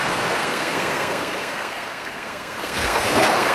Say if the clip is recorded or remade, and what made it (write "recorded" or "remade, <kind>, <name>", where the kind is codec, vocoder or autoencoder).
remade, codec, SNAC